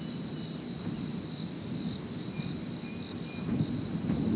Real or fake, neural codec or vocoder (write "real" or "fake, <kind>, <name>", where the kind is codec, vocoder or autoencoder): real